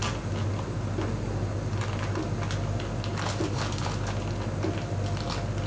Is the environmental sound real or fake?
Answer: real